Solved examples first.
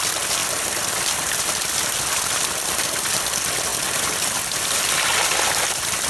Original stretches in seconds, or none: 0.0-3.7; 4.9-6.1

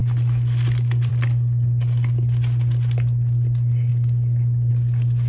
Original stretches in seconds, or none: 0.0-5.3